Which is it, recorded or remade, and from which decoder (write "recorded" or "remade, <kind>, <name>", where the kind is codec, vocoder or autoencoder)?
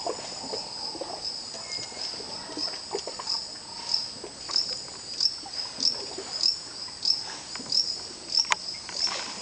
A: recorded